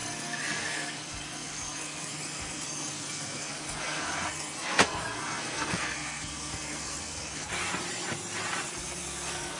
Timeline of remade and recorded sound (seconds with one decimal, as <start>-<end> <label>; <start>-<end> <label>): 0.0-7.6 remade; 7.6-8.7 recorded; 8.7-9.6 remade